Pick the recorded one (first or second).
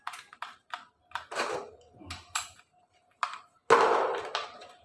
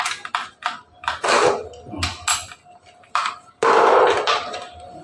second